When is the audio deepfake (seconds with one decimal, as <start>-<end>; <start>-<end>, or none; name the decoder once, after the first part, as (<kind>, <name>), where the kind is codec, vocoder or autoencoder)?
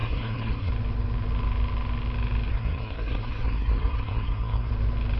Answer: 0.0-0.7 (codec, SNAC); 2.5-4.7